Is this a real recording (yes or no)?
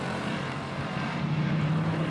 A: no